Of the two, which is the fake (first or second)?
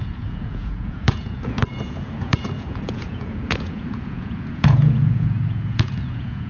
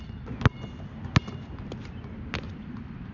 first